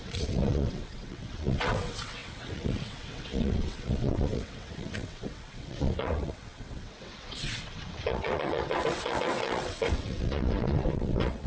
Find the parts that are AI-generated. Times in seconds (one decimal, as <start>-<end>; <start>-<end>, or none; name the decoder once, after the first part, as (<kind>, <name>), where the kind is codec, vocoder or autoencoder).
0.0-11.5 (vocoder, WaveNeXt)